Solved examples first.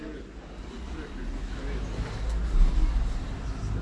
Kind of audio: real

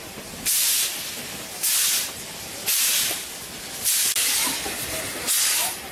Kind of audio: real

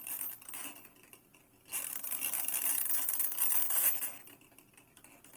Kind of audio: real